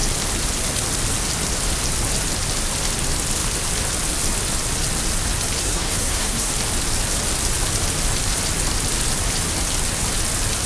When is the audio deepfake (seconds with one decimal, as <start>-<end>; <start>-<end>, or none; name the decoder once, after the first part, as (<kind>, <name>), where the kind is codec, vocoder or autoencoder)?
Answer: 5.6-6.5 (codec, SNAC)